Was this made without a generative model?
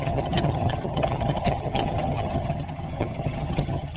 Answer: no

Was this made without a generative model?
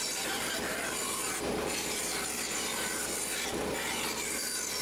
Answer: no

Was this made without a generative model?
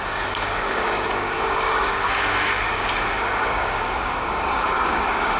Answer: no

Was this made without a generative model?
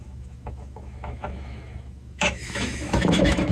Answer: no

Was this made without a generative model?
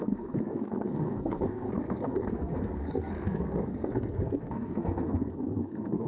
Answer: no